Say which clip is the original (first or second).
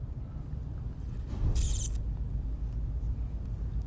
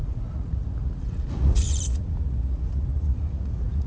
first